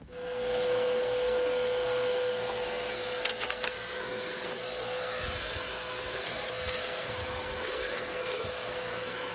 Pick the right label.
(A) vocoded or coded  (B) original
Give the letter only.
A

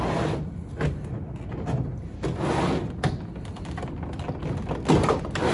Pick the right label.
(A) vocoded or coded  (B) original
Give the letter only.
B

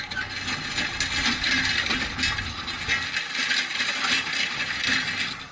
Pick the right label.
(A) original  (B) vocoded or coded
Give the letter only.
A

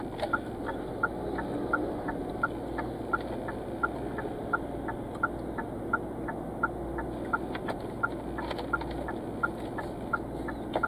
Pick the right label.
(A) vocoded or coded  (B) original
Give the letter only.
B